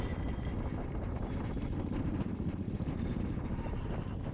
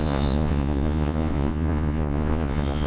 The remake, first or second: second